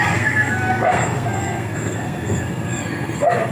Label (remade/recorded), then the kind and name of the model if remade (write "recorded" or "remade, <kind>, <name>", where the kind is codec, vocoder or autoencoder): remade, codec, SNAC